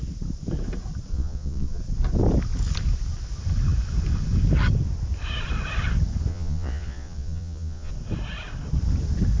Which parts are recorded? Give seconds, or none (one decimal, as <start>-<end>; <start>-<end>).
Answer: 0.0-1.1; 1.8-6.3; 7.9-9.4